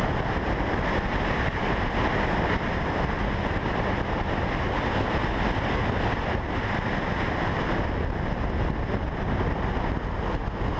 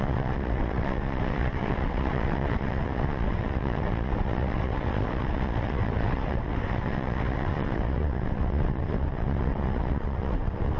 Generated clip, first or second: second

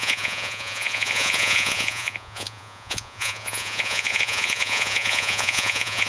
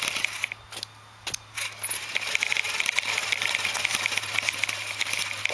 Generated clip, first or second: first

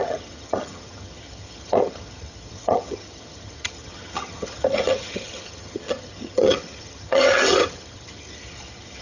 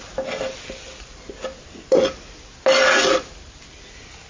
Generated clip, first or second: first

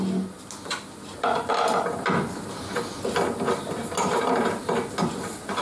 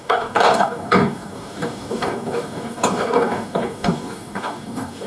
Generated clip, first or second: second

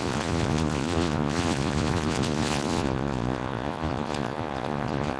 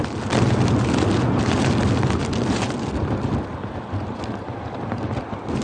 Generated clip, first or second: first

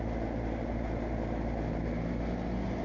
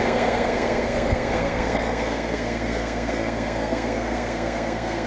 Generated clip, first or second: second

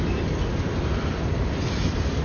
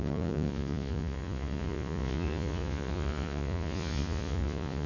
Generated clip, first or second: second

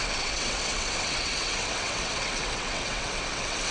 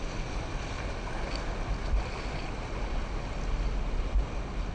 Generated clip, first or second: first